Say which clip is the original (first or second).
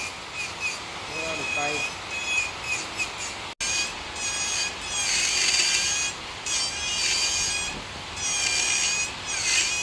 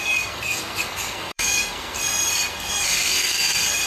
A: first